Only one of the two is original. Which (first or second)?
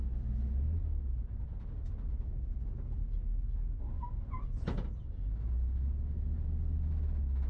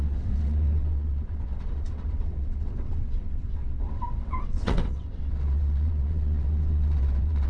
first